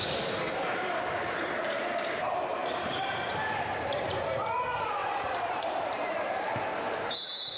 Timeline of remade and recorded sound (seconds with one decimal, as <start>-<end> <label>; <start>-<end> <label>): 0.0-7.6 remade